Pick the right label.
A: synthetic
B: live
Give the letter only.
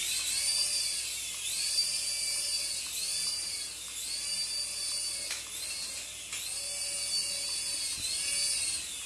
B